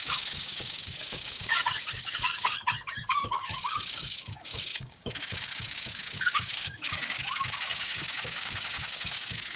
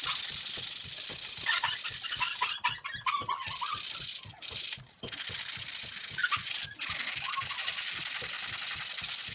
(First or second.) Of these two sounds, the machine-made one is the first